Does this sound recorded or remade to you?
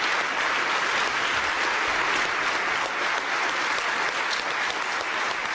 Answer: recorded